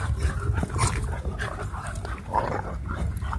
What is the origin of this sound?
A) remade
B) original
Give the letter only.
B